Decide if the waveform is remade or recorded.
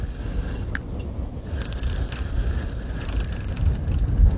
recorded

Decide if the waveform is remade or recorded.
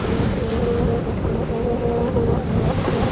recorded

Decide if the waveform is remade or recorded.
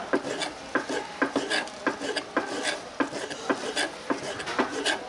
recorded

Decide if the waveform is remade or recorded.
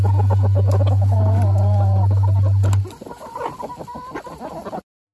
recorded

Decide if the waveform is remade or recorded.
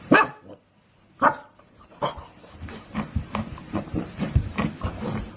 remade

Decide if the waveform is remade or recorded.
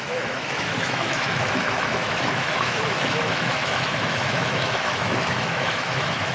remade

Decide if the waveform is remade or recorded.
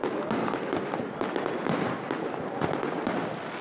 recorded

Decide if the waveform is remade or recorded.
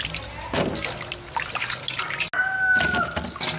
recorded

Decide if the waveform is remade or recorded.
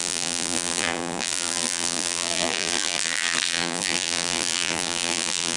remade